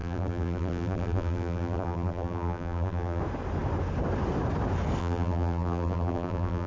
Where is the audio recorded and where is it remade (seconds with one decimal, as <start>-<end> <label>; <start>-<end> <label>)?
0.0-3.2 remade; 3.2-5.0 recorded; 5.0-6.7 remade